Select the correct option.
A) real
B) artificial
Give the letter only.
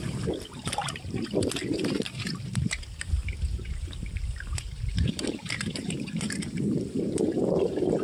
B